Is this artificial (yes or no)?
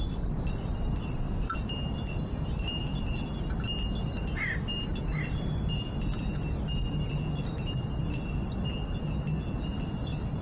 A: no